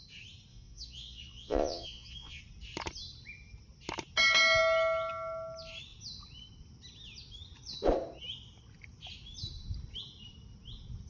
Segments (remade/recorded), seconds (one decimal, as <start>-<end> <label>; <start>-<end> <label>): 0.0-0.5 recorded; 0.5-2.4 remade; 2.4-11.1 recorded